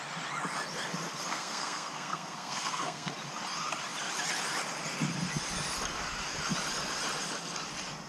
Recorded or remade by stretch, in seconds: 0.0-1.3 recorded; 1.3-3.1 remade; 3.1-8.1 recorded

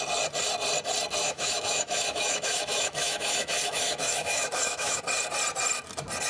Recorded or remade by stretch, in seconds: 0.0-1.2 recorded; 1.2-5.0 remade; 5.0-6.3 recorded

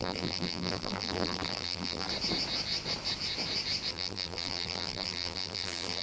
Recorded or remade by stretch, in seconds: 0.0-2.1 remade; 2.1-3.9 recorded; 3.9-6.0 remade